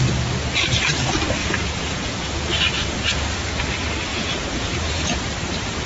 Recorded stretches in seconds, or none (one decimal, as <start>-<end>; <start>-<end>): 0.0-1.4; 2.2-4.1; 5.3-5.9